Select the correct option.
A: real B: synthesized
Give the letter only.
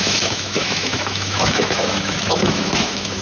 B